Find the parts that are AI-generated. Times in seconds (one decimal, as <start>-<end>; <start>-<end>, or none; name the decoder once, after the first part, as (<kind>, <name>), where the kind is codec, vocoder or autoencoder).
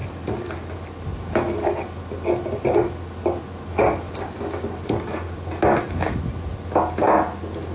none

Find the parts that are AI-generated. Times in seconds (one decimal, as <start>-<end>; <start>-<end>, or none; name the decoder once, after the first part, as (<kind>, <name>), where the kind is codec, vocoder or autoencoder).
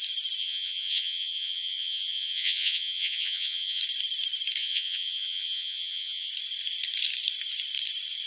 0.4-3.8 (vocoder, Vocos); 4.6-6.3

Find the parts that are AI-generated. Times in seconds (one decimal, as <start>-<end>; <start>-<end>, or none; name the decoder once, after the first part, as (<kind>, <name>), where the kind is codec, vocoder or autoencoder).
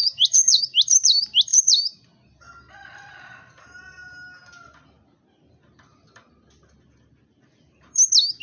0.0-0.6 (vocoder, Vocos)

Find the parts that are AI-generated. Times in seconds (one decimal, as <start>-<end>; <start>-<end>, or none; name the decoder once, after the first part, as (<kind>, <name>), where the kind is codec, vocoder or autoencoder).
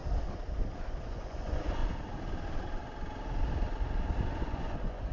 1.0-1.8 (vocoder, Vocos); 4.4-5.1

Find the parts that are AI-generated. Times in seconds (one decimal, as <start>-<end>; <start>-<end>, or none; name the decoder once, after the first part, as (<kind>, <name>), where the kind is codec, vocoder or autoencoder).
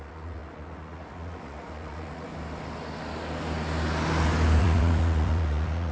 0.0-2.3 (vocoder, Vocos); 4.6-5.9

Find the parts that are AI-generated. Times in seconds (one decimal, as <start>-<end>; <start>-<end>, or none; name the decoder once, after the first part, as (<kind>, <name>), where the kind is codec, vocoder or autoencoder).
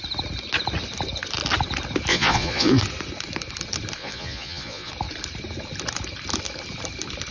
2.1-2.8 (vocoder, Vocos); 4.0-4.9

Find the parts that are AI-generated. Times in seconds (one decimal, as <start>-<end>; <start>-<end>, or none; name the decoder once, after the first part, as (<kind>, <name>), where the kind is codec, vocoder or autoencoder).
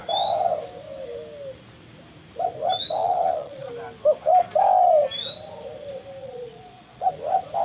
3.0-3.7 (vocoder, Vocos); 6.2-7.1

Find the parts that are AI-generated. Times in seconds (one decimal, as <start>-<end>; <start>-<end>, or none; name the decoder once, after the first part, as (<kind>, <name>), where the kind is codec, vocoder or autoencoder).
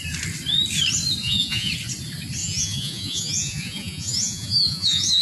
1.2-1.7 (vocoder, Vocos); 2.4-5.2